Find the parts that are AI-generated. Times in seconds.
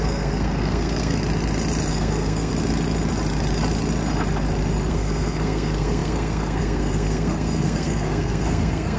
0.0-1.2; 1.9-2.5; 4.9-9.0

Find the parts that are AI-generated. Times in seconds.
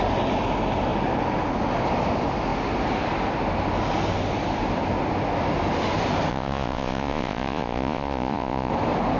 6.3-8.7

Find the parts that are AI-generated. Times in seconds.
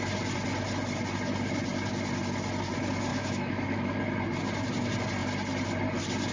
3.1-4.0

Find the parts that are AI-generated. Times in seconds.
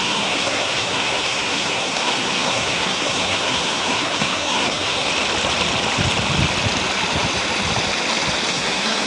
0.0-5.1; 8.5-9.1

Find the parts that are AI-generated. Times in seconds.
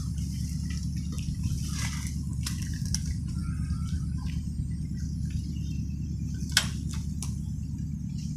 none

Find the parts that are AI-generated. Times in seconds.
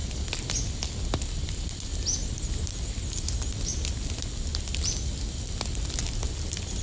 none